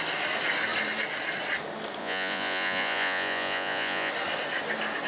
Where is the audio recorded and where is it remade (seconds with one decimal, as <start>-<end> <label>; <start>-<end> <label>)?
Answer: 0.0-2.0 recorded; 2.0-4.1 remade; 4.1-5.1 recorded